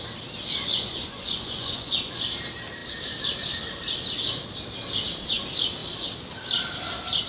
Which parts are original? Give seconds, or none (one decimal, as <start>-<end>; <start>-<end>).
0.0-0.7; 2.2-7.3